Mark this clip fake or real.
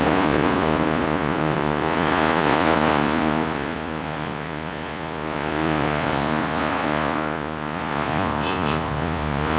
fake